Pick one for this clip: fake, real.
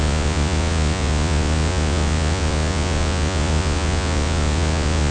fake